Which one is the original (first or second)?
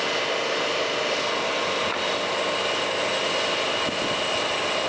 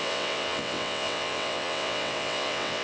first